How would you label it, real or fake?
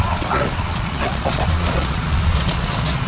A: fake